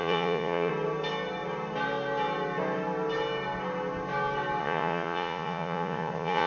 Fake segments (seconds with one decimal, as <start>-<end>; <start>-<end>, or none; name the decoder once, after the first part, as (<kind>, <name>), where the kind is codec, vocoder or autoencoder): 0.0-0.7 (vocoder, Vocos); 4.6-6.5